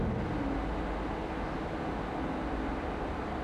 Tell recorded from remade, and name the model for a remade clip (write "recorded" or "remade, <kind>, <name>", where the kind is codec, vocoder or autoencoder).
recorded